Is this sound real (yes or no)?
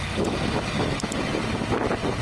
yes